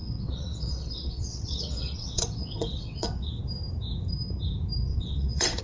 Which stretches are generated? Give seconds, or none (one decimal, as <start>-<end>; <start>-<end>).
0.0-3.4; 4.9-5.6